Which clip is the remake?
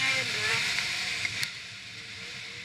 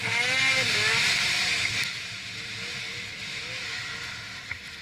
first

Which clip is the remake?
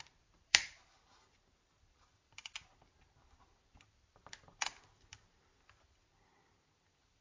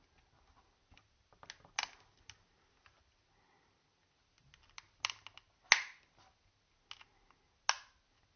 first